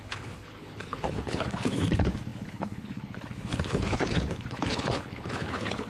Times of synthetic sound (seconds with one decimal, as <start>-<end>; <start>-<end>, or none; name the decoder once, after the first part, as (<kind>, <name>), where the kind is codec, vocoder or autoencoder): 0.0-5.9 (codec, HILCodec)